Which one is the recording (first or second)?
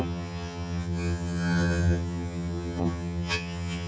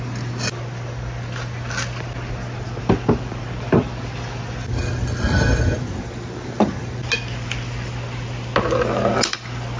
second